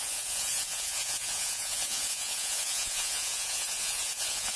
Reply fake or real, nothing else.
fake